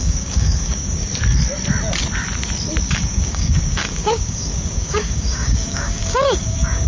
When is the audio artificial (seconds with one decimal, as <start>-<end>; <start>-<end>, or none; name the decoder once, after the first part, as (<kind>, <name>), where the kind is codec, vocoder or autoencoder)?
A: 0.0-1.1 (codec, DAC); 2.9-6.9